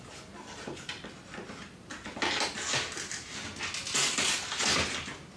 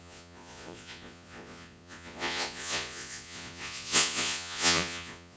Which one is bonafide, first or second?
first